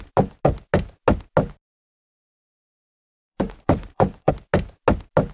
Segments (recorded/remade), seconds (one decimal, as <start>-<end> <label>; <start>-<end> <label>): 0.0-3.2 recorded; 3.2-4.3 remade; 4.3-5.3 recorded